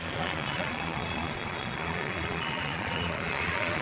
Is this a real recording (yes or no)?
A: no